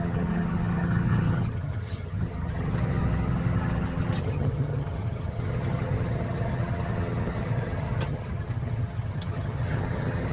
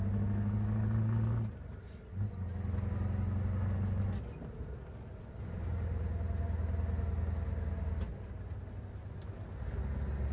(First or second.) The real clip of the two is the second